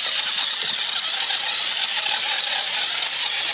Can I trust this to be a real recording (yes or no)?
no